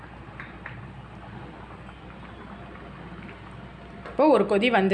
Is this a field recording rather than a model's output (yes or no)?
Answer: yes